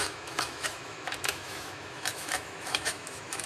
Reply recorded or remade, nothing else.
remade